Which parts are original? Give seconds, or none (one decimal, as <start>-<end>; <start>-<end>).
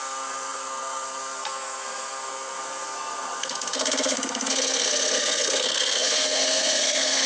none